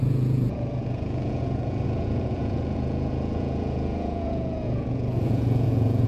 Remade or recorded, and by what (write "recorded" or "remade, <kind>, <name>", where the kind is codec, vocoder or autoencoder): remade, vocoder, Vocos